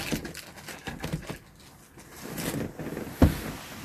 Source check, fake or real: real